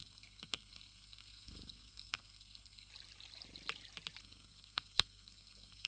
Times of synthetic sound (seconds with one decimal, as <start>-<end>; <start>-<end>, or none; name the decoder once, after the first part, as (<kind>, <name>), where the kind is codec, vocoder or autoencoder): 0.0-2.9 (codec, SNAC); 4.2-5.9